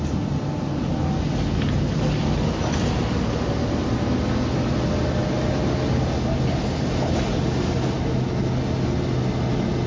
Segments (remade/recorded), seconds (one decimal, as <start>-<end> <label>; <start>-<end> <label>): 0.0-9.9 recorded